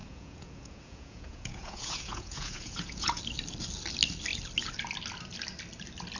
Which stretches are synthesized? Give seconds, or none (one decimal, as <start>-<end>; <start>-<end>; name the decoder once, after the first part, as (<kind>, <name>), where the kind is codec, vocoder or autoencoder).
0.0-3.2 (vocoder, Vocos)